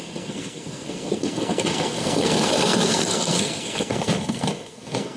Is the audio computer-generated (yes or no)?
yes